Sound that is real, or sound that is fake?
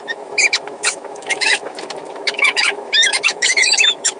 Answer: fake